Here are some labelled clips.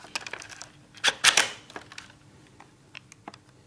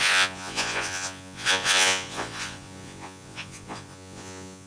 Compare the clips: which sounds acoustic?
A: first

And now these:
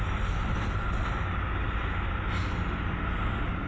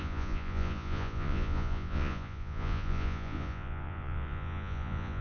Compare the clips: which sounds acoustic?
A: first